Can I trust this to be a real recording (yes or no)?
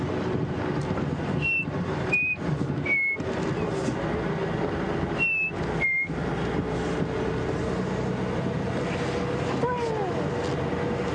yes